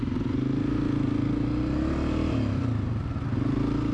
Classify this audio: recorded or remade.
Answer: recorded